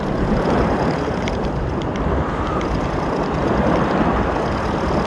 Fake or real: real